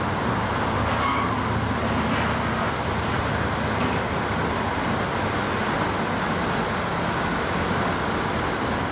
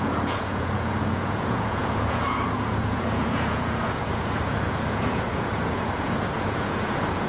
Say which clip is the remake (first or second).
second